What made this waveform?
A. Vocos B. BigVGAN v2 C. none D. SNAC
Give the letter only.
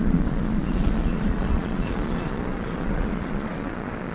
A